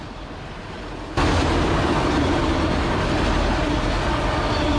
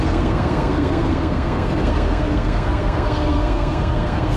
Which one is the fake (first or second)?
second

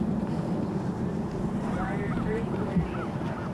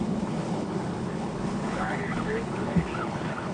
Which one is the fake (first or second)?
second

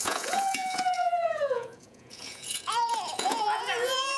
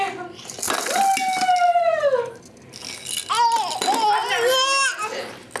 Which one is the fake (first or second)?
first